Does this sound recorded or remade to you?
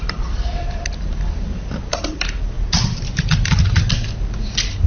recorded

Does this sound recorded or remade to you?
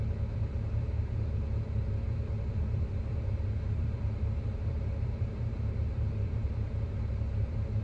remade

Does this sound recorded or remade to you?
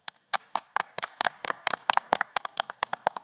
remade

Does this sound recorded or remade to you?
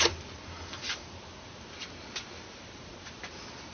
recorded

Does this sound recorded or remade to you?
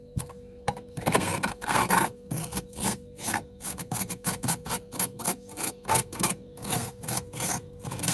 remade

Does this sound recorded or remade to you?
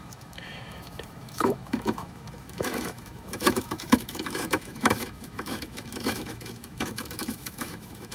remade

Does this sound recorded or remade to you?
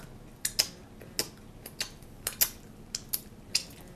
recorded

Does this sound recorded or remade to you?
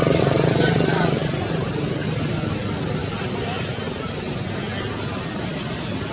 recorded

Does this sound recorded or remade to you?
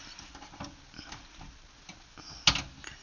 recorded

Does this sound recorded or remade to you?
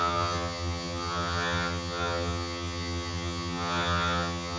remade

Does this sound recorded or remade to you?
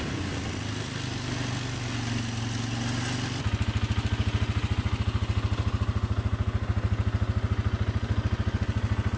recorded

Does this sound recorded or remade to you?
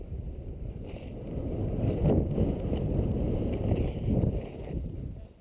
remade